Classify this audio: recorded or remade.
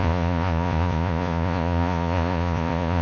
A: remade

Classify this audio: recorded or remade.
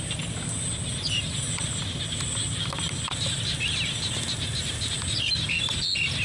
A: recorded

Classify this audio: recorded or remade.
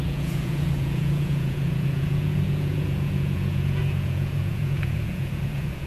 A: remade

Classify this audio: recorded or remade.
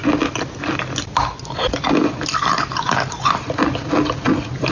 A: recorded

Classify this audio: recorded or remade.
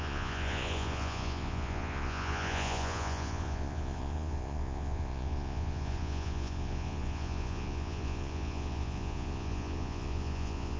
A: remade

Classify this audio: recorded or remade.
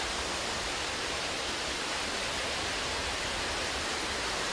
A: recorded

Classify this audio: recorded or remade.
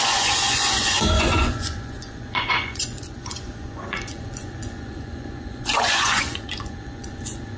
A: remade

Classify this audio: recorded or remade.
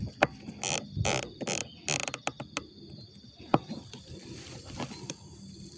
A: recorded